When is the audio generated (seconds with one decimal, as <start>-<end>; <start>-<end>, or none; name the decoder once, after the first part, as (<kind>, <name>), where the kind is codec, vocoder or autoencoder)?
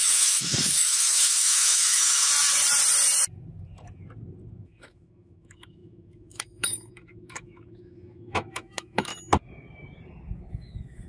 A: 0.0-2.3 (autoencoder, DAC-VAE); 4.5-9.1; 10.5-11.1